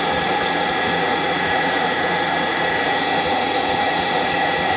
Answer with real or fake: fake